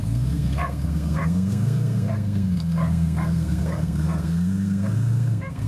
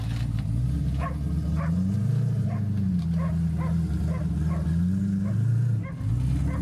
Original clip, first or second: second